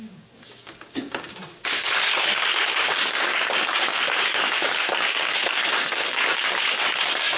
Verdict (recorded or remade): remade